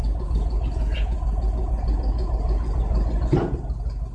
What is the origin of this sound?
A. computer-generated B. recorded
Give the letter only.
B